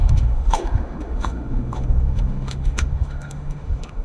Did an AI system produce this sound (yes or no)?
yes